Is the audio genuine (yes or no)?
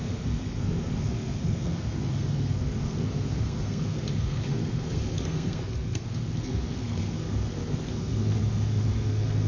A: no